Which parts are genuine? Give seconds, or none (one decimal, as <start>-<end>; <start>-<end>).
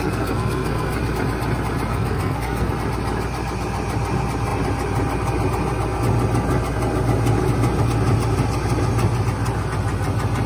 1.0-1.9; 2.7-10.5